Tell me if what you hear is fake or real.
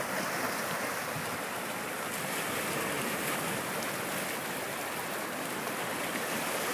real